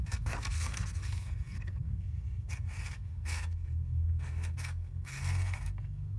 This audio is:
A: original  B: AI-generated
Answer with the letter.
B